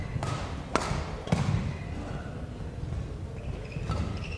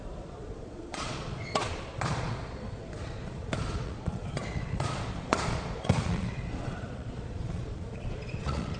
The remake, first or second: second